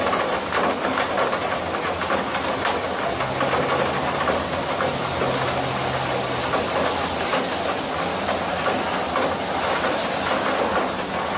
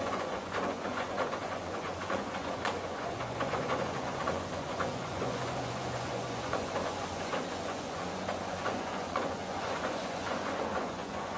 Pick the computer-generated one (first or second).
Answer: second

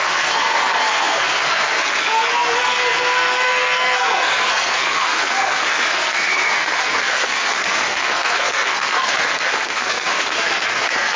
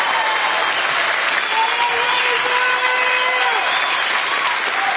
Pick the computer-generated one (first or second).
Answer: first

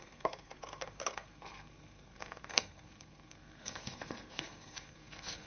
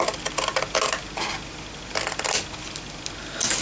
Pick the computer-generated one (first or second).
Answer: first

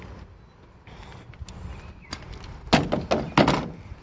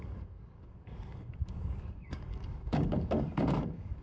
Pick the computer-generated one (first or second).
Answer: second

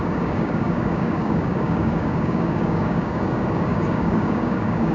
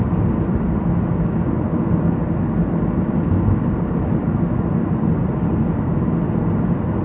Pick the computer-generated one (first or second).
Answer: first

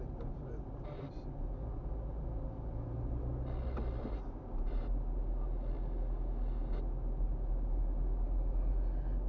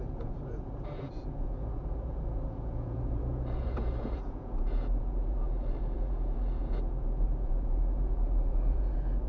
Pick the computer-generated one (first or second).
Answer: second